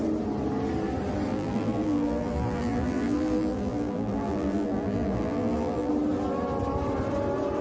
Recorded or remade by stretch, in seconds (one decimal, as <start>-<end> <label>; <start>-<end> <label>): 0.0-1.3 recorded; 1.3-5.9 remade; 5.9-7.6 recorded